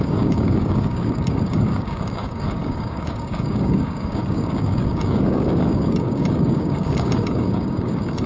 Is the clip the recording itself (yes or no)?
no